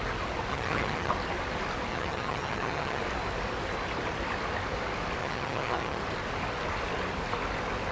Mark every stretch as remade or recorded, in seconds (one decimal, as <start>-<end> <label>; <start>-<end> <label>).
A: 0.0-0.5 recorded; 0.5-1.1 remade; 1.1-1.9 recorded; 1.9-3.0 remade; 3.0-5.2 recorded; 5.2-6.0 remade; 6.0-7.9 recorded